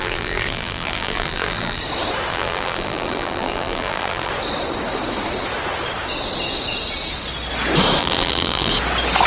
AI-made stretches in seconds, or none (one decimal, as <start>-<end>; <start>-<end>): 0.0-1.8; 2.3-4.3; 8.0-8.7